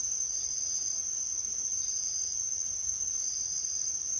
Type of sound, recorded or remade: recorded